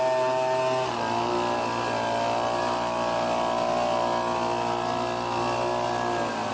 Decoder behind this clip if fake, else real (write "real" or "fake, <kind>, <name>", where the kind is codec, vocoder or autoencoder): real